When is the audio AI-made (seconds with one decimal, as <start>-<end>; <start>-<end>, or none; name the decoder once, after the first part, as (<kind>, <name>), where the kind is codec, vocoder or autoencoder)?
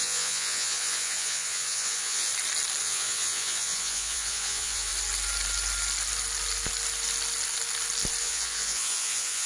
0.0-2.3 (vocoder, Vocos); 2.8-4.9; 8.2-9.5